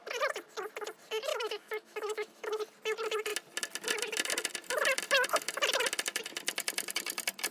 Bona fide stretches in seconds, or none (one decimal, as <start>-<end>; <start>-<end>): 0.0-1.3; 2.6-7.5